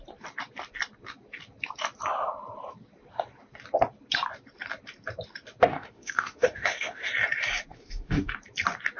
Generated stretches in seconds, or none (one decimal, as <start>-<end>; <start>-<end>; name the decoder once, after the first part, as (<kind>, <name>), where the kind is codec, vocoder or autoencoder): 5.7-7.1 (autoencoder, DAC-VAE); 7.7-8.3